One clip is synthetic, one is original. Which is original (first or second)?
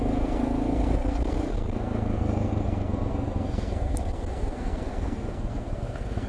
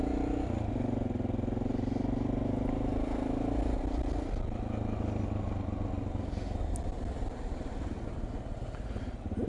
second